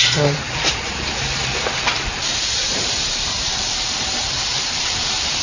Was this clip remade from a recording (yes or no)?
yes